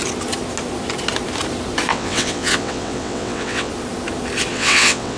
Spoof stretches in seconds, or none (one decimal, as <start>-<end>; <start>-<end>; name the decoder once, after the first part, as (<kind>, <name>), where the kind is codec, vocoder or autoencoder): 1.9-3.7 (vocoder, WaveNeXt); 4.5-5.2